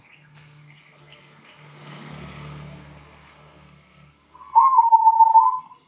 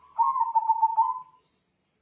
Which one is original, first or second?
second